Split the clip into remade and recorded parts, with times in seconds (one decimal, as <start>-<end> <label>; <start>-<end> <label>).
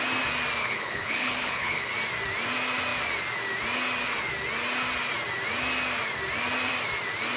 0.0-0.6 recorded; 0.6-1.9 remade; 1.9-7.4 recorded